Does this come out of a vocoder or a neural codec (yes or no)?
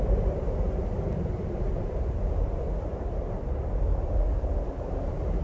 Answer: yes